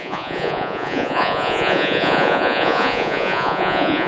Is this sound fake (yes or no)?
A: yes